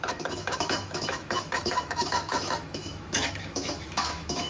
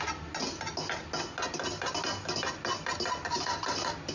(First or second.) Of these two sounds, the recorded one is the second